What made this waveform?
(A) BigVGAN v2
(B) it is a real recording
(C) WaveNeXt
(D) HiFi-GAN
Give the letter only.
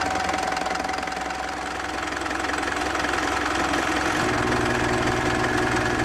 B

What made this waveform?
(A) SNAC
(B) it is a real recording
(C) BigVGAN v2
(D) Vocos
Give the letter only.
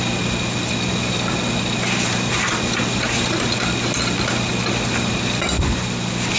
B